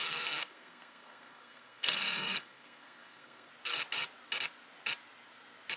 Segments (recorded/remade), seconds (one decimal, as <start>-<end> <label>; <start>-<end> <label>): 0.0-3.5 remade; 3.5-5.8 recorded